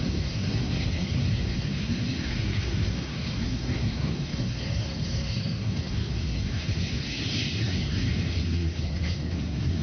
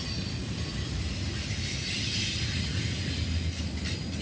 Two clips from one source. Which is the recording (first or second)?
second